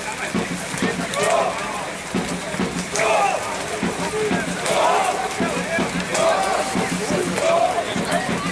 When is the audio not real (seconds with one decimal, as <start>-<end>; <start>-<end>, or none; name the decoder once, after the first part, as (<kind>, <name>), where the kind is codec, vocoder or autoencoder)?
none